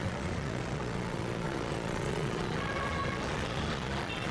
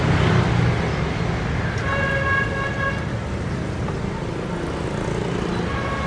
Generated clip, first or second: first